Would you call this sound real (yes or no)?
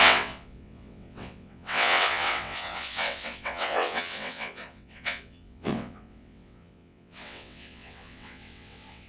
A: no